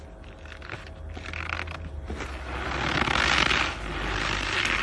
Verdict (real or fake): real